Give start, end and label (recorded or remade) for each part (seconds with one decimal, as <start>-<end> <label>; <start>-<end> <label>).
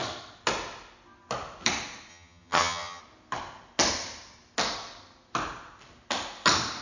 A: 0.0-2.1 recorded; 2.1-3.0 remade; 3.0-6.8 recorded